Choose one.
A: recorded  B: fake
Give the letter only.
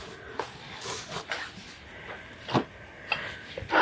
A